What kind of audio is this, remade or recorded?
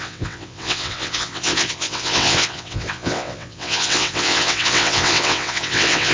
remade